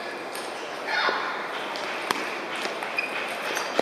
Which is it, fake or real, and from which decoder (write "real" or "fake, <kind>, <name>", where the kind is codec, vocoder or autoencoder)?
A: real